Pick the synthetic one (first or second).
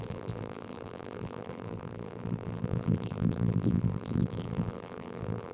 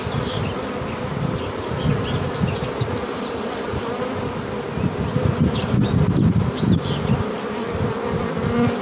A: first